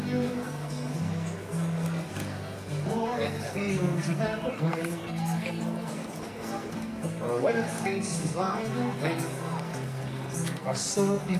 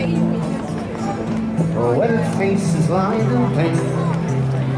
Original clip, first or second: second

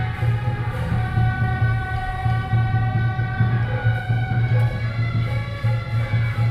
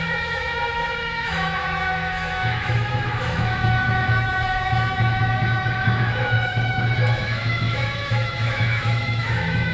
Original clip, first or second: first